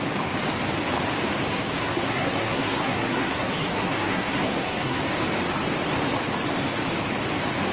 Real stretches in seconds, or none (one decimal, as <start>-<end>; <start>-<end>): 0.0-1.5; 5.0-7.7